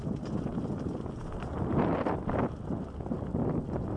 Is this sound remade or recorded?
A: recorded